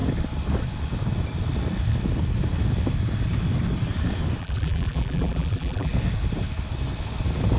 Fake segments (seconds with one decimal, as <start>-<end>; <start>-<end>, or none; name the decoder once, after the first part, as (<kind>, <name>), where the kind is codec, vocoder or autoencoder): 4.4-5.9 (vocoder, BigVGAN v2)